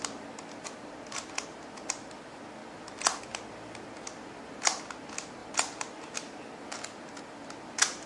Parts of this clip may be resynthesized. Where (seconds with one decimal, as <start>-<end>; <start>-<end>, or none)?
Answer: none